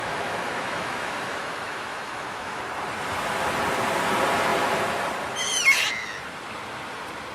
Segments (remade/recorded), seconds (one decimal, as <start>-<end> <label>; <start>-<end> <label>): 0.0-2.6 remade; 2.6-7.3 recorded